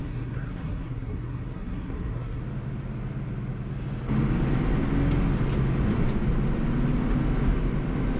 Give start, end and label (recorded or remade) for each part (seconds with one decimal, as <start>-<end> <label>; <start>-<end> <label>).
0.0-2.4 remade; 2.4-8.2 recorded